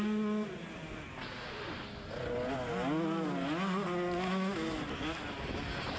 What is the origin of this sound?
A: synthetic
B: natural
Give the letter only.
B